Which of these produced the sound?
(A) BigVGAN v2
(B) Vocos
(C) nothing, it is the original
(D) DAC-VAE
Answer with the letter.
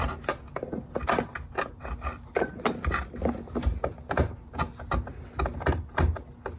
C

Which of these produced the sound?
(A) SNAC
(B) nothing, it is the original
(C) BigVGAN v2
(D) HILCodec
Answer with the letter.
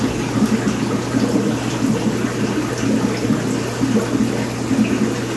B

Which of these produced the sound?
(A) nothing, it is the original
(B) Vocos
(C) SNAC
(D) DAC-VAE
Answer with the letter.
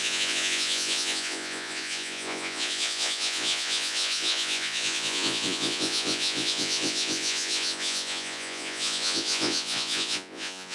B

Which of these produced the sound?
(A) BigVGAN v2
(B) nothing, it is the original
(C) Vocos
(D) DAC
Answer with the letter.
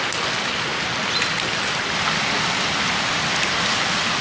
B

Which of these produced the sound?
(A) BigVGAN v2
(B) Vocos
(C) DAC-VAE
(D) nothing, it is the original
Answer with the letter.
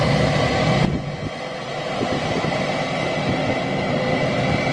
D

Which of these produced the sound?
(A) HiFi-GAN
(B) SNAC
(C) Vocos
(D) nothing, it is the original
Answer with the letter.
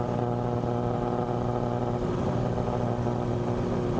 D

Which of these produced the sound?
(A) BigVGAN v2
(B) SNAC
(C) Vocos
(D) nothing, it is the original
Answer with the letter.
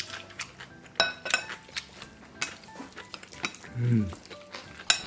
D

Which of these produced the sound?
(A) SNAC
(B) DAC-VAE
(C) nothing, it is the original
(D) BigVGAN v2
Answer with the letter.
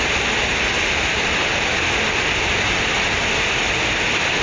C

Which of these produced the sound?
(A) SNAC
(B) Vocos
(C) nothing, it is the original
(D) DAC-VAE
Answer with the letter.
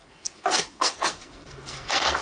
A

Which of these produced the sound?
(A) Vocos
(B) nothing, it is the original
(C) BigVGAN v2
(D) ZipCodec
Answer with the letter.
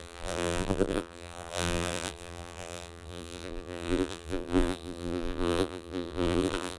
C